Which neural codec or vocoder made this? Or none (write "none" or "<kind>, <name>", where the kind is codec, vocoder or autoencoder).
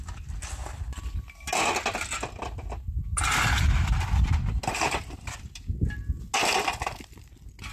none